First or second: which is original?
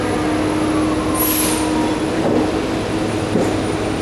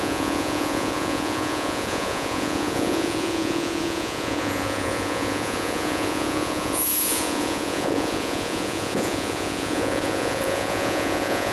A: first